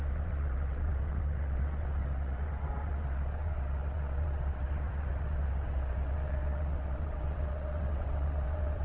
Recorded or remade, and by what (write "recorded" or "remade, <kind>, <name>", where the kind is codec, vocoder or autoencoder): remade, vocoder, WaveNeXt